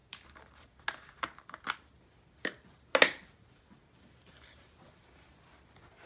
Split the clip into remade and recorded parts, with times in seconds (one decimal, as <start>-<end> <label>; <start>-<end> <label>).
0.0-6.1 recorded